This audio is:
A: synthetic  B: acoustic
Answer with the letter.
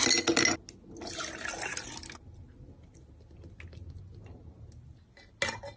B